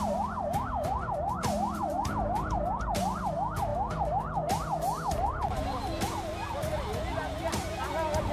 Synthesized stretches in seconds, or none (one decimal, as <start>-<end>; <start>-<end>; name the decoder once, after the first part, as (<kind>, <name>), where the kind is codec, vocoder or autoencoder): 0.0-3.7 (vocoder, BigVGAN v2)